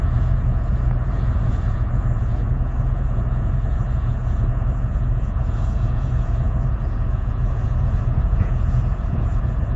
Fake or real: fake